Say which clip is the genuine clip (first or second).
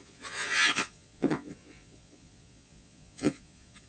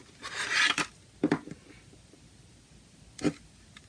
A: second